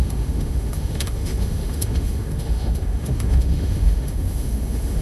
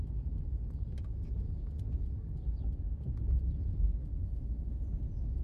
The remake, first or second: first